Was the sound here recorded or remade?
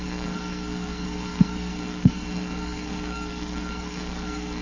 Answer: remade